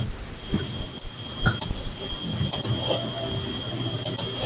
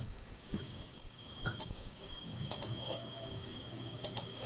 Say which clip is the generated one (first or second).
second